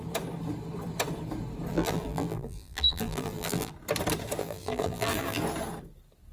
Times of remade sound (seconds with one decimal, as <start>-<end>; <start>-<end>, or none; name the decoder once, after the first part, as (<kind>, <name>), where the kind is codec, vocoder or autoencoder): 1.7-3.7 (vocoder, BigVGAN v2); 4.4-5.4